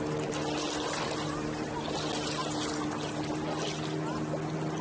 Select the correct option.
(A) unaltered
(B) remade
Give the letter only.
A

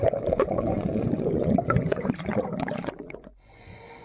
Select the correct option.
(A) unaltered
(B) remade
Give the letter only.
B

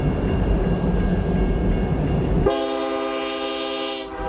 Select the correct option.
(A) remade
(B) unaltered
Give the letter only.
B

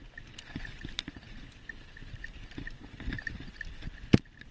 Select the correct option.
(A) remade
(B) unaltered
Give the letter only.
B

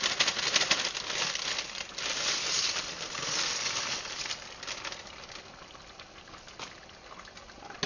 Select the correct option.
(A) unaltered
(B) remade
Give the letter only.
A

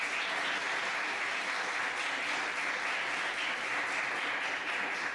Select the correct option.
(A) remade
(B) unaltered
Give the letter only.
B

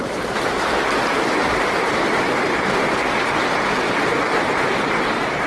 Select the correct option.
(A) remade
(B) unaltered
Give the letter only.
B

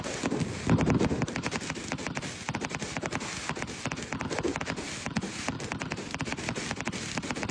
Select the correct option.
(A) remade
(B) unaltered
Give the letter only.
A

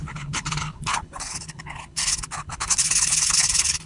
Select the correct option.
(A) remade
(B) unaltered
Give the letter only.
A